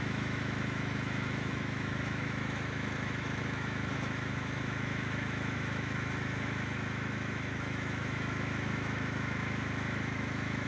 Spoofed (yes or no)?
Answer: yes